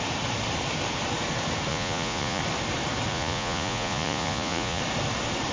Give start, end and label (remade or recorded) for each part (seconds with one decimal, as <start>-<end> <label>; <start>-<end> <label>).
0.0-1.7 recorded; 1.7-2.4 remade; 2.4-3.1 recorded; 3.1-4.8 remade; 4.8-5.5 recorded